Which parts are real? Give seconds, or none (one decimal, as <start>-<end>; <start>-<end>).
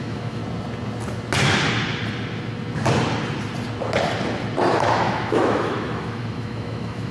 0.4-4.7